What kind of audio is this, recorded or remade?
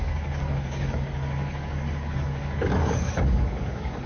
remade